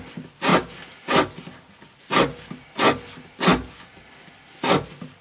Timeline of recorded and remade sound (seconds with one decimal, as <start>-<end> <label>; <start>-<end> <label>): 0.0-5.2 recorded